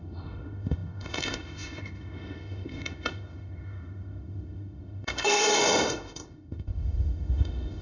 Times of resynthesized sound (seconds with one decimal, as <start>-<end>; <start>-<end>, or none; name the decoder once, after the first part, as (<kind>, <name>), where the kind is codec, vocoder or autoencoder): 0.0-7.8 (autoencoder, DAC-VAE)

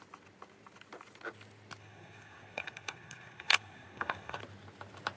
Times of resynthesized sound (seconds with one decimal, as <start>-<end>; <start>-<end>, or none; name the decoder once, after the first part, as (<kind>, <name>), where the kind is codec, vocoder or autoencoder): 1.8-4.4 (codec, SNAC)

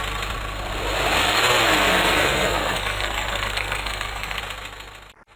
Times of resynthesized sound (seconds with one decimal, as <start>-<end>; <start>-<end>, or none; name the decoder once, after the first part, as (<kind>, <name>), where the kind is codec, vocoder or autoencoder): 1.2-4.4 (codec, SNAC)

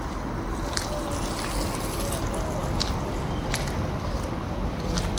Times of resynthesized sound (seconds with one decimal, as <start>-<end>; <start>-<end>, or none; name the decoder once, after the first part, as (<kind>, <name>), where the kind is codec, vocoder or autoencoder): none